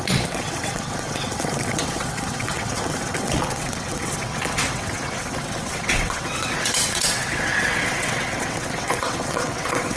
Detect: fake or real fake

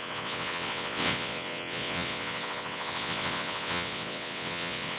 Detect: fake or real fake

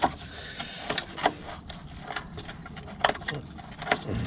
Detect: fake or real real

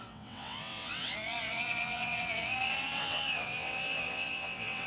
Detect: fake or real fake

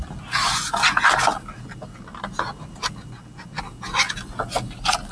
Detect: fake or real real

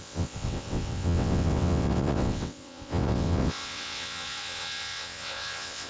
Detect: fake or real fake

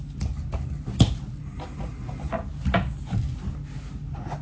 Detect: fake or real real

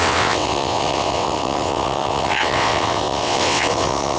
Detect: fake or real fake